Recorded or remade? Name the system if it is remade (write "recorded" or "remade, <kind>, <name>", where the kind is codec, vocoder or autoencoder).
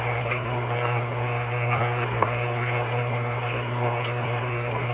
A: remade, codec, SNAC